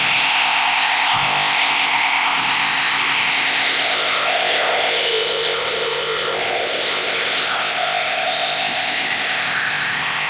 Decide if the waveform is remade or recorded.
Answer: remade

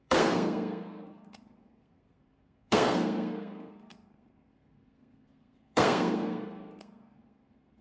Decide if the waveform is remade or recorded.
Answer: remade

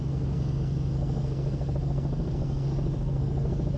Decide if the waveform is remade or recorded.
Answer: remade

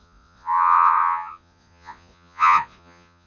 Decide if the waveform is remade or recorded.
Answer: remade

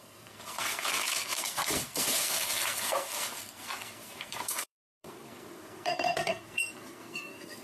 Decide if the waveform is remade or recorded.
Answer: remade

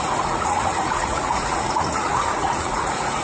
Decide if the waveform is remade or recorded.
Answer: remade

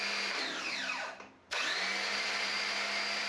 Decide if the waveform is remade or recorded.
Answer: recorded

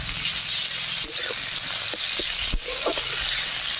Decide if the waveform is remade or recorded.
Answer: recorded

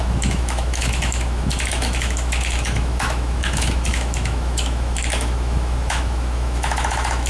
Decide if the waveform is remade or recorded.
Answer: remade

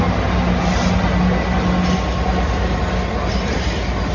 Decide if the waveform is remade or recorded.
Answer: recorded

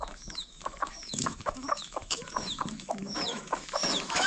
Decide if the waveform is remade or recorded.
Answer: remade